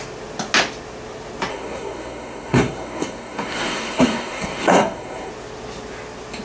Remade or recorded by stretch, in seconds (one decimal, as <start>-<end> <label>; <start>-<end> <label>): 0.0-1.5 recorded; 1.5-5.3 remade; 5.3-6.4 recorded